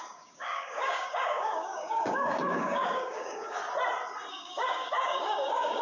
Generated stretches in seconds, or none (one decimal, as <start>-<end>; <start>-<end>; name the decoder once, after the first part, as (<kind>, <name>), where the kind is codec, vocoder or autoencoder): 0.0-3.6 (codec, DAC); 4.3-5.8